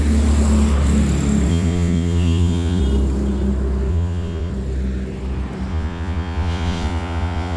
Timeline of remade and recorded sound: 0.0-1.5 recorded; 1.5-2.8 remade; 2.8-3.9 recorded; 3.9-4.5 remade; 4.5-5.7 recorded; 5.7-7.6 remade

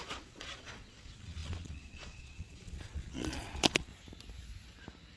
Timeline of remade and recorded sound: 0.0-3.9 remade; 3.9-5.2 recorded

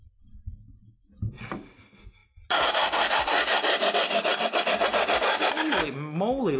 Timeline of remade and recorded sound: 0.0-6.6 recorded

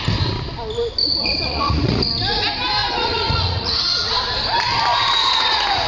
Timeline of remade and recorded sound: 0.0-1.0 recorded; 1.0-2.0 remade; 2.0-2.8 recorded; 2.8-4.1 remade; 4.1-4.9 recorded; 4.9-5.9 remade

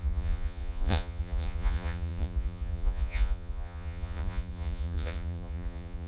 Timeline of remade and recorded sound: 0.0-6.1 remade